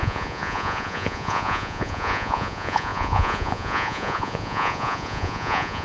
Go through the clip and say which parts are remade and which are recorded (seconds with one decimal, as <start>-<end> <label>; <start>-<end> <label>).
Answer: 0.0-5.8 remade